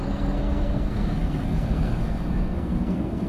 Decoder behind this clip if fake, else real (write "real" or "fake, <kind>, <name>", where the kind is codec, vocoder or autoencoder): fake, codec, SNAC